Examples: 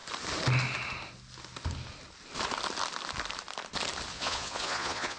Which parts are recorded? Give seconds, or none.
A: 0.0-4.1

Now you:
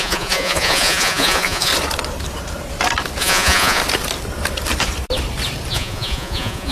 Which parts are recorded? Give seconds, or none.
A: 1.7-3.2; 3.8-5.7

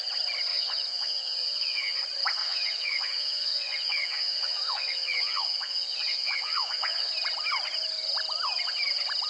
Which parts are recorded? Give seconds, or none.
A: 0.0-0.5; 2.0-2.4; 7.1-9.3

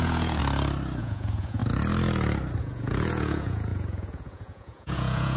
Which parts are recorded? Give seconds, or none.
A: 0.4-1.0; 1.6-2.6

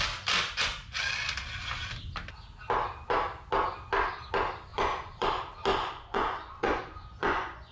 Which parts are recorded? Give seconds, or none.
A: 0.0-4.7; 5.3-5.7

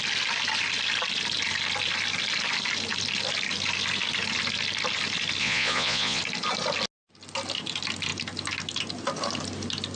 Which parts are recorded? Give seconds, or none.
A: 0.0-5.4; 6.2-10.0

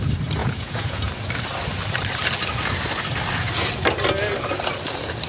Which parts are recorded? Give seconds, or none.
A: 0.0-0.4; 1.1-5.3